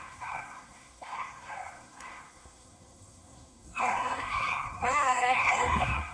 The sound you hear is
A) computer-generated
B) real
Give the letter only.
A